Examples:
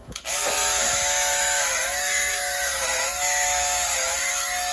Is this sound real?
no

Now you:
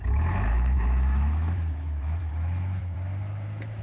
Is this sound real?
no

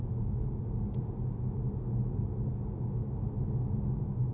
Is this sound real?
yes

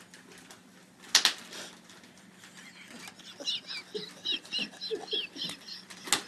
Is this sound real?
yes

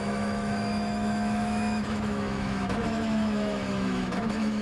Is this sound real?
no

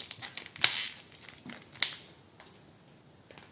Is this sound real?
yes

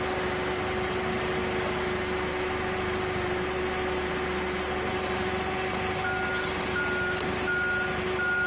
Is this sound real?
yes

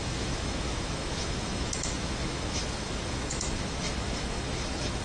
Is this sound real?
no